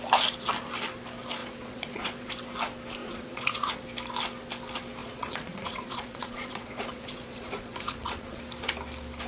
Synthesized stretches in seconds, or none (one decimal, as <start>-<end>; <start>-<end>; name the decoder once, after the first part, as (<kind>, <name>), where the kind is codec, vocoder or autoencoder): 1.4-2.3 (vocoder, Vocos); 3.0-3.7; 5.0-8.4